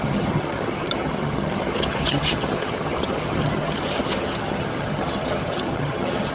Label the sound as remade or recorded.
remade